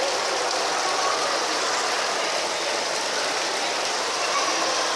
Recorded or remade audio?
recorded